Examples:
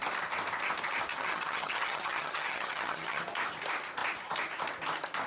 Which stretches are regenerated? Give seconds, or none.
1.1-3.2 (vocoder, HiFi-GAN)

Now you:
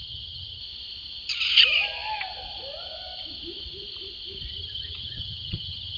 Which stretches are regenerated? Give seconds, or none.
0.0-0.6 (vocoder, HiFi-GAN); 4.5-6.0